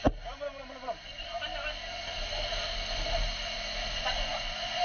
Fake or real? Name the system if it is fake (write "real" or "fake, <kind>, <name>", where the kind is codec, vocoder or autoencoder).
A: real